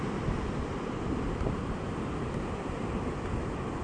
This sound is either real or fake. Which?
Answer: fake